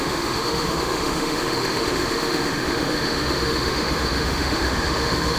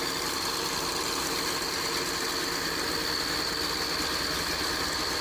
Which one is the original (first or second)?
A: second